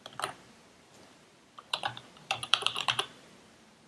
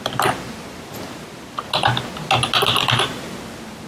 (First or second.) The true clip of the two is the second